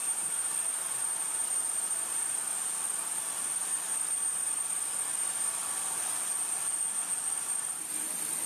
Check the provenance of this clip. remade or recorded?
recorded